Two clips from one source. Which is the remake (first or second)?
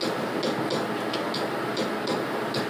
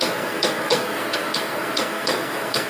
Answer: second